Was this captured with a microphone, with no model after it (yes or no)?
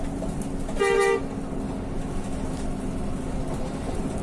yes